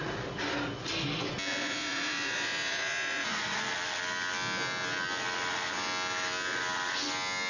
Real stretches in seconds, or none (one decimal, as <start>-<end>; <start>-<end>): 0.0-1.6; 3.6-7.5

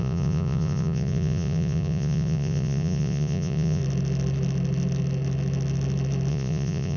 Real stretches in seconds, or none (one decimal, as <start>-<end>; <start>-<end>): 3.8-6.3